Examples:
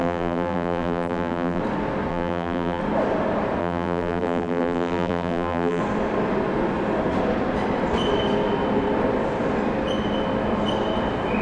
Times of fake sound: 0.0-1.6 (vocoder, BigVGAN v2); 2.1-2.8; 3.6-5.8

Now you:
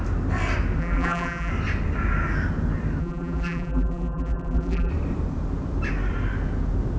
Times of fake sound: 0.8-1.5 (vocoder, BigVGAN v2); 3.0-4.9